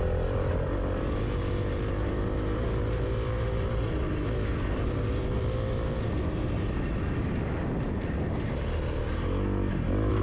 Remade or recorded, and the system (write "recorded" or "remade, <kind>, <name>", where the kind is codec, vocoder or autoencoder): recorded